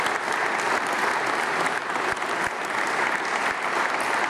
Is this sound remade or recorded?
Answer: recorded